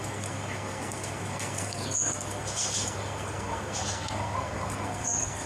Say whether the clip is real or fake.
fake